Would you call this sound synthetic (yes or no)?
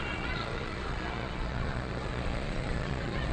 yes